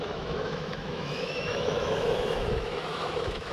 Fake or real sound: fake